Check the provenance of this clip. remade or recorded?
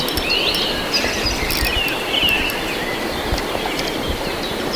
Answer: recorded